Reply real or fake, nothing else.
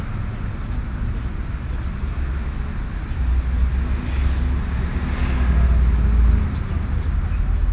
real